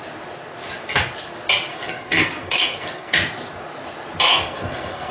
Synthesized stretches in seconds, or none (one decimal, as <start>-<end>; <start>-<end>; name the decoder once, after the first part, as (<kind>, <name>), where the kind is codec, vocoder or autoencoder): 1.7-3.1 (codec, SNAC); 4.3-5.1